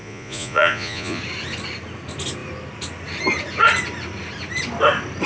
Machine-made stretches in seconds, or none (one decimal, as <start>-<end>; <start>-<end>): 0.0-1.2